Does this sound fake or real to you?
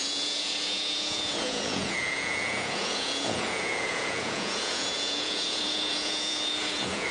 fake